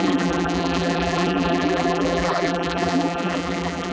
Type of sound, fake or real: fake